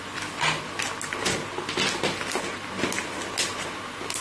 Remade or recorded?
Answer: recorded